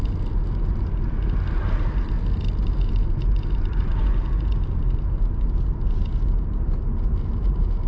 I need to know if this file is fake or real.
real